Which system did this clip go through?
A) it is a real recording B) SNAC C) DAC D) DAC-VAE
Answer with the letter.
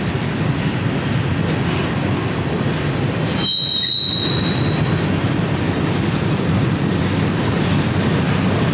A